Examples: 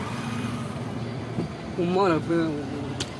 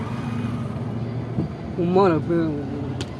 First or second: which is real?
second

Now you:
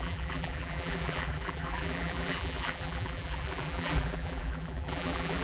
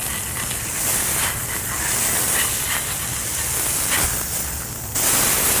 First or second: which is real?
second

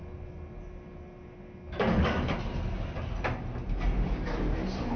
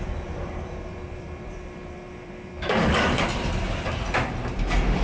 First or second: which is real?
first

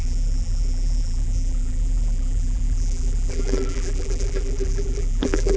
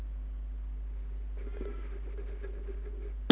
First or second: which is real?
second